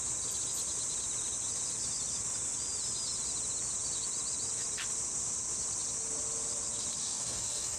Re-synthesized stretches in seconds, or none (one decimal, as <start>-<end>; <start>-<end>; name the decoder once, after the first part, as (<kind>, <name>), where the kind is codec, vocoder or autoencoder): 7.0-7.8 (codec, DAC)